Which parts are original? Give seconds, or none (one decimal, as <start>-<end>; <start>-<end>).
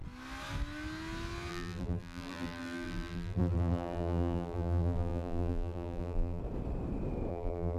0.0-1.5; 6.4-7.3